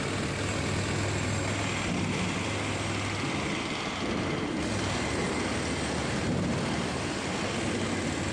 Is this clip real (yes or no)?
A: yes